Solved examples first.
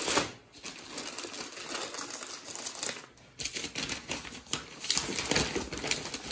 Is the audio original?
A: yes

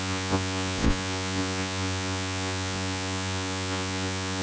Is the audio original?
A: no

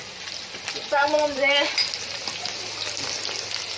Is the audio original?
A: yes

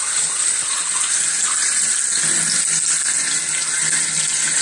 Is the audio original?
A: yes